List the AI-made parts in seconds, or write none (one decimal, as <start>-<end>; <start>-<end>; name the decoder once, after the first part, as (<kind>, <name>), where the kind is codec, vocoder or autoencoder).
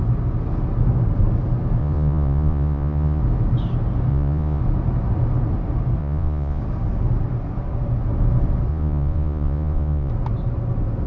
1.8-3.2 (vocoder, Vocos); 4.1-4.6; 6.0-6.6; 8.7-10.1